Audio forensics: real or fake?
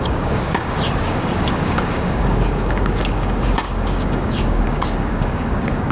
fake